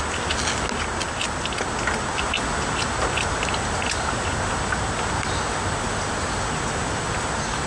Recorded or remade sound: recorded